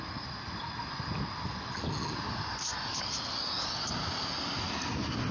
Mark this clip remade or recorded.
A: recorded